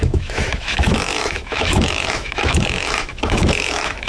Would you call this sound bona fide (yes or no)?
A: no